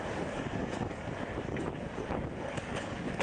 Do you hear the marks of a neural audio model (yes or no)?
yes